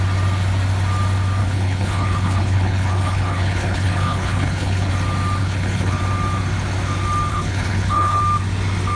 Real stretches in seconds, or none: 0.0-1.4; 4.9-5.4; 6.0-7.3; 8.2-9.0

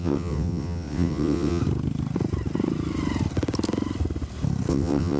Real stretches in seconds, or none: 1.6-4.7

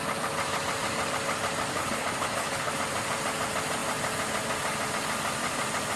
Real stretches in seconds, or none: 0.0-1.7; 2.7-6.0

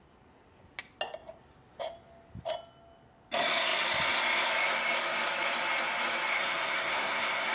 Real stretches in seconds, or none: 0.0-6.3

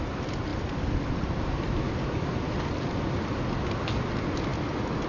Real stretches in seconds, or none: 0.0-5.1